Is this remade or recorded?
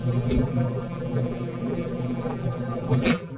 remade